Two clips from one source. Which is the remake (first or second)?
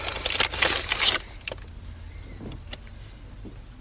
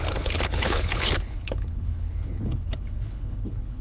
second